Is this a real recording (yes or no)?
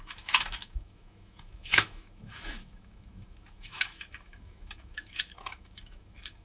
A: no